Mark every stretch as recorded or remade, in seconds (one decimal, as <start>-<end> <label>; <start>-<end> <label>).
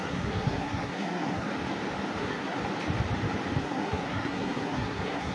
0.0-1.5 remade; 1.5-2.2 recorded; 2.2-2.6 remade; 2.6-3.6 recorded; 3.6-5.3 remade